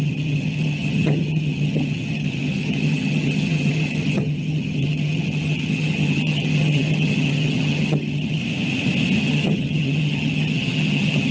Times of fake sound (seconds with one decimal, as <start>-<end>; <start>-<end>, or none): 0.0-8.4; 9.2-11.3